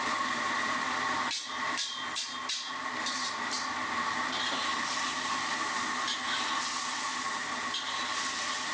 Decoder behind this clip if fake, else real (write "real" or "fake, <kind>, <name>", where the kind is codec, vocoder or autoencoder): real